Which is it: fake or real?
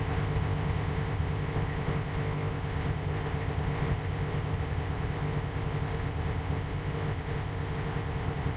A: fake